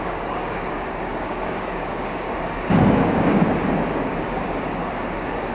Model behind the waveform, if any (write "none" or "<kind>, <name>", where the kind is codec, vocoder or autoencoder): codec, DAC